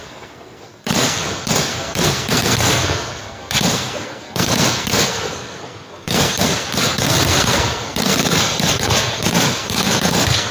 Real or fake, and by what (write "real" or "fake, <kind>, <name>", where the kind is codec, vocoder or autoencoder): fake, codec, SNAC